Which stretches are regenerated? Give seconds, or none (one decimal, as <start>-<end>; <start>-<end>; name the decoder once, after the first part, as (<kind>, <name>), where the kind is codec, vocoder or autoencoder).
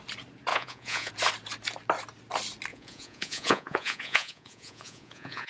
0.5-1.1 (vocoder, Vocos); 2.7-5.5